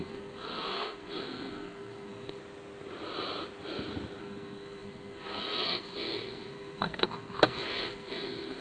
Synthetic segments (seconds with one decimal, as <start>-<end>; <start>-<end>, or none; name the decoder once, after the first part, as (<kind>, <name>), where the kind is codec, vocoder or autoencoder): 0.0-2.4 (codec, SNAC); 4.2-8.6